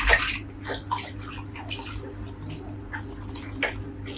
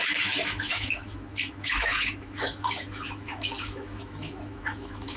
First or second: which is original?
first